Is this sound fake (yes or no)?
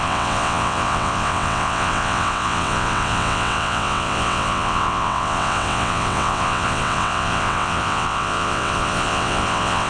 yes